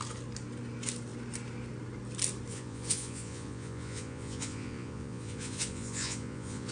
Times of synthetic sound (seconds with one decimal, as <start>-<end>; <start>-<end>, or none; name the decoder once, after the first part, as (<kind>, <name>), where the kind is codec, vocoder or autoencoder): 2.5-6.7 (vocoder, Vocos)